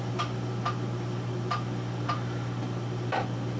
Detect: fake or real real